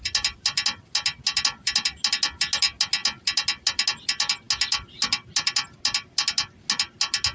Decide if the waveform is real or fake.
real